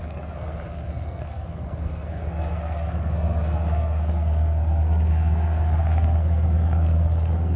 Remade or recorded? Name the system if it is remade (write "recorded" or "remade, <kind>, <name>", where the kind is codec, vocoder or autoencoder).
remade, codec, SNAC